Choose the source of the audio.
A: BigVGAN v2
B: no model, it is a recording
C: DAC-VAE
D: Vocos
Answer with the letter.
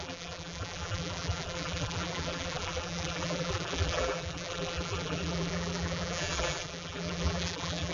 A